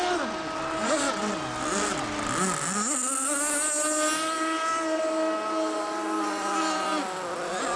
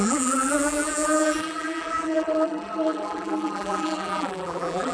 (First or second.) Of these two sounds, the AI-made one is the second